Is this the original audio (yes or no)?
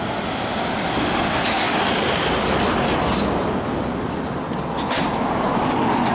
yes